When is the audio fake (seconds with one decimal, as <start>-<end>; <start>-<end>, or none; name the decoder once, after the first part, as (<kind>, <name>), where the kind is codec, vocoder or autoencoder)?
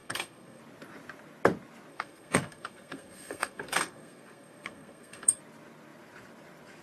0.0-0.6 (codec, SNAC); 1.9-5.4